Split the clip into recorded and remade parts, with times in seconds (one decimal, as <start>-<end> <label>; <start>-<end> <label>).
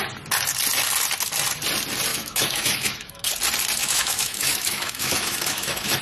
0.0-2.1 recorded; 2.1-3.3 remade; 3.3-3.8 recorded; 3.8-6.0 remade